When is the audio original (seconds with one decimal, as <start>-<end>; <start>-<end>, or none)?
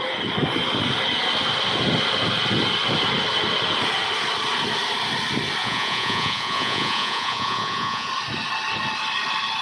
0.0-5.6; 8.1-9.6